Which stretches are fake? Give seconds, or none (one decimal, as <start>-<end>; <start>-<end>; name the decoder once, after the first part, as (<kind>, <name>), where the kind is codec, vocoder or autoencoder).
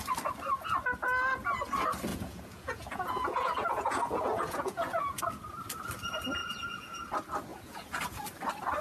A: 2.1-5.2 (vocoder, Vocos); 6.4-7.1; 7.5-8.0